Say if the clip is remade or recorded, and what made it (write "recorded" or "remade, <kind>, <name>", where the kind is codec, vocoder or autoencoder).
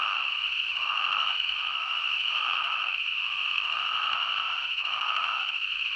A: remade, autoencoder, DAC-VAE